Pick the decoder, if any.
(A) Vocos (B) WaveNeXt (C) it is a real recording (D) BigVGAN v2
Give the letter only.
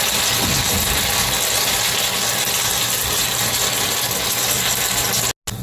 C